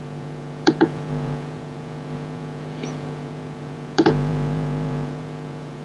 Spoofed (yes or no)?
yes